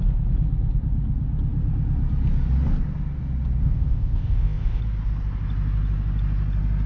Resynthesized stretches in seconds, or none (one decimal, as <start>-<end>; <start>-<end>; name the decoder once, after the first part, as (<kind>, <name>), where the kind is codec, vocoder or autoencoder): 3.6-4.8 (codec, ZipCodec)